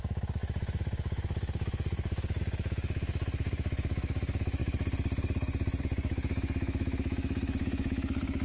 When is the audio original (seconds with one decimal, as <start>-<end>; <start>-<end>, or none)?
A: 4.6-5.8